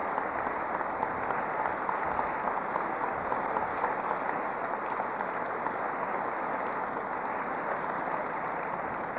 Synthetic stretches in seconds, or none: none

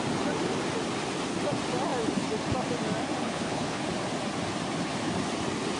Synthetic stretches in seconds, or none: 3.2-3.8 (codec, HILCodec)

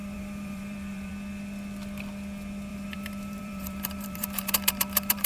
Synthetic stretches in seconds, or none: 0.0-1.1 (vocoder, BigVGAN v2); 2.7-5.3